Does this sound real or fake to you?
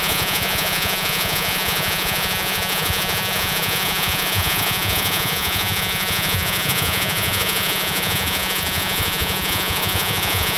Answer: fake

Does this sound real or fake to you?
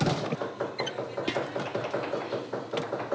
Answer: real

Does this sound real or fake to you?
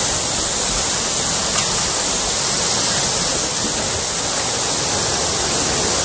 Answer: real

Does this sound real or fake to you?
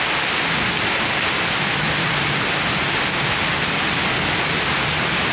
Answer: real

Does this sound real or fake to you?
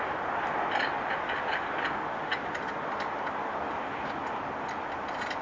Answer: real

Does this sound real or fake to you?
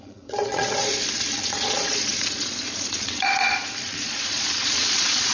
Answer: fake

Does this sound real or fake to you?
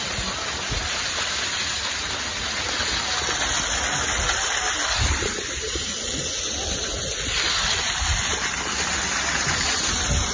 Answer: real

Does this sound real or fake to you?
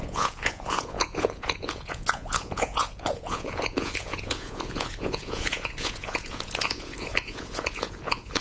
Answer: fake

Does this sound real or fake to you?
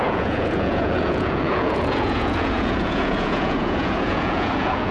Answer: fake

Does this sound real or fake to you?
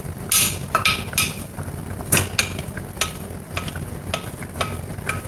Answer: real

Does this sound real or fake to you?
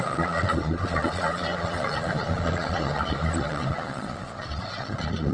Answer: fake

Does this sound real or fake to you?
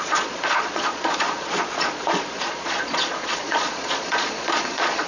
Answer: fake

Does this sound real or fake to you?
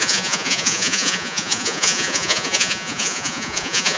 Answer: fake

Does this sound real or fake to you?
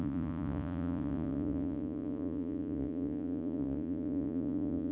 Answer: fake